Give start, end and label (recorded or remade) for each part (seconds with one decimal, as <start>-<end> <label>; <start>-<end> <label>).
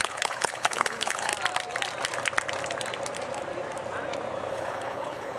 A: 0.0-1.3 remade; 1.3-4.5 recorded; 4.5-5.4 remade